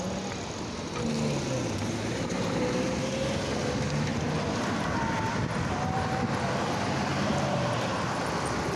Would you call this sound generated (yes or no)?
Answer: no